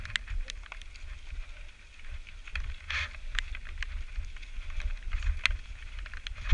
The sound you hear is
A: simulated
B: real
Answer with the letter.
B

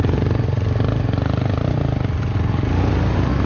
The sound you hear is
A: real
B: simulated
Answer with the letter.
A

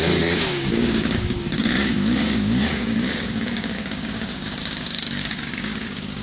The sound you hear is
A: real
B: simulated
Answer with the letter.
B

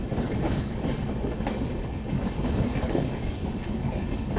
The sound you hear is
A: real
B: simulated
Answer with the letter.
B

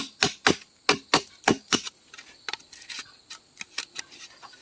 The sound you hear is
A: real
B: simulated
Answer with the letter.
A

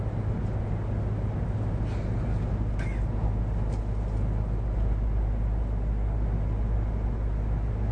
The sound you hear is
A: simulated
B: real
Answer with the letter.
B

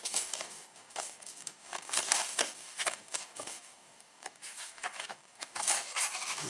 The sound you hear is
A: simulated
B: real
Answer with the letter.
A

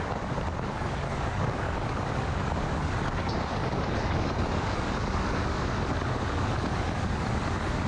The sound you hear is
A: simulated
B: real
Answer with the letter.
A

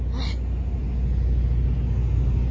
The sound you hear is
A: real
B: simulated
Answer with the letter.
A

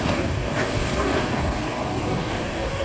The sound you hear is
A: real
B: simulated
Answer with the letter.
B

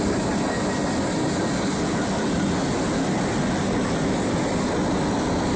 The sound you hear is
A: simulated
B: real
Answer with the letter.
B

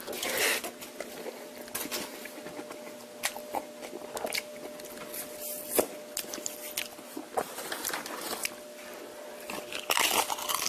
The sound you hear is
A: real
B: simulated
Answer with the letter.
A